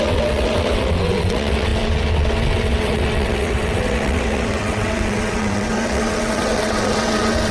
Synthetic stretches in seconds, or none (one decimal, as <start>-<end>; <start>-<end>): 0.0-7.5

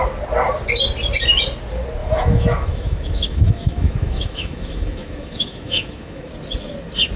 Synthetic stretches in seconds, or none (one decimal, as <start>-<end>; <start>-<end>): 2.0-6.3

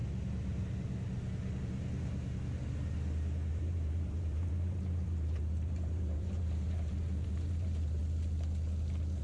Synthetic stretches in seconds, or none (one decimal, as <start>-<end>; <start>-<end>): 1.6-2.6; 3.5-8.0

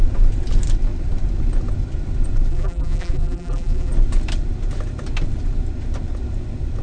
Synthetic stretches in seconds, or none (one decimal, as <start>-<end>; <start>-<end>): 2.5-3.9

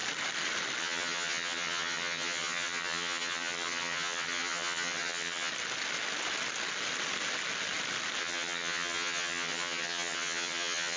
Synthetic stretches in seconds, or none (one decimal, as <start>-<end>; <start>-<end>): 0.8-5.5; 8.2-11.0

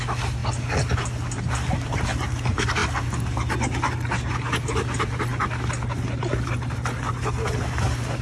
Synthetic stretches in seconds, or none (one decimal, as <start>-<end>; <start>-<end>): none

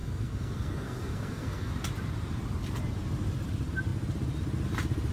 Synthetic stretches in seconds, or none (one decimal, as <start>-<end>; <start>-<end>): 0.0-1.7